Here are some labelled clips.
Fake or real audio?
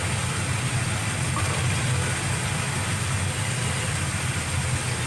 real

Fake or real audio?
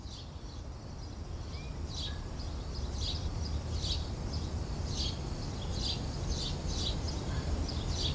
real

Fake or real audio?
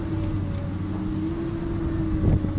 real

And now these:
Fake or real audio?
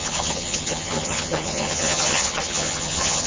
fake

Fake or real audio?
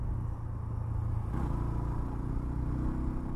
real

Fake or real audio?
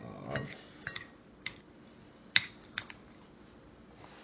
real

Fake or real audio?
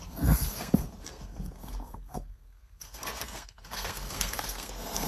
fake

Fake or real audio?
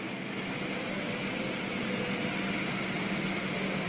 real